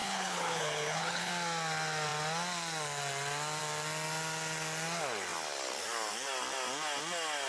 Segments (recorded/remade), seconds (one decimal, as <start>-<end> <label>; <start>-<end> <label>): 0.0-1.3 remade; 1.3-7.5 recorded